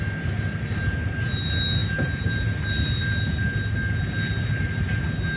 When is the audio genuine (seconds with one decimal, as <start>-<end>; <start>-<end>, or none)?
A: 0.0-5.4